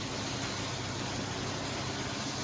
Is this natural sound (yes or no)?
yes